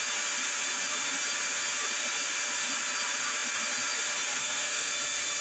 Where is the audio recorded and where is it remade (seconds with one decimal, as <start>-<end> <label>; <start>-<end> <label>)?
0.0-4.4 recorded; 4.4-4.9 remade; 4.9-5.4 recorded

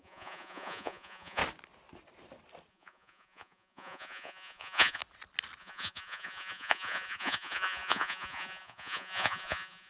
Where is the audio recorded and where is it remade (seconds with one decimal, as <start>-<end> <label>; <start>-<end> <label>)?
0.0-1.4 remade; 1.4-2.7 recorded; 2.7-5.0 remade; 5.0-5.6 recorded; 5.6-9.9 remade